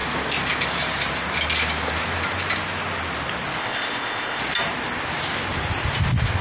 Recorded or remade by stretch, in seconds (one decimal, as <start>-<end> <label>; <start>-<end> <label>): 0.0-3.6 recorded; 3.6-4.4 remade; 4.4-6.4 recorded